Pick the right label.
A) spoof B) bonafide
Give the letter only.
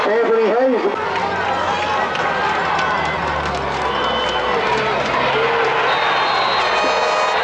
B